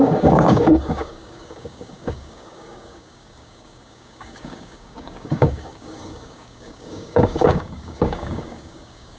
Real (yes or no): no